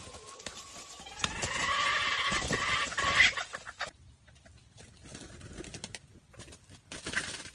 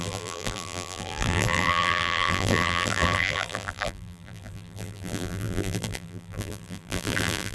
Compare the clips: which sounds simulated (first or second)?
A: second